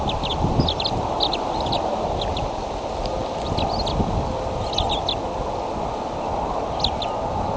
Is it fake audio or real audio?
real